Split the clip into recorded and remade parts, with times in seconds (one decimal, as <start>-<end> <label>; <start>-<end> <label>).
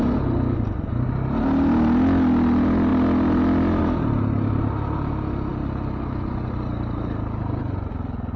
0.0-8.4 recorded